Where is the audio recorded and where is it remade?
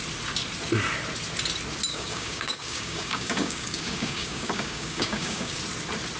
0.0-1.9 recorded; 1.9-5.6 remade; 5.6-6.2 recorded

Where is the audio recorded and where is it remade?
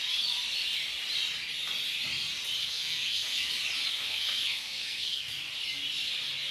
0.0-2.6 recorded; 2.6-3.5 remade; 3.5-3.9 recorded; 3.9-5.3 remade; 5.3-6.5 recorded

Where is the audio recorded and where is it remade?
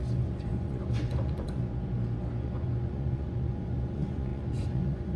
0.0-1.6 remade; 1.6-2.4 recorded; 2.4-5.2 remade